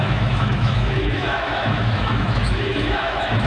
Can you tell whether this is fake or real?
fake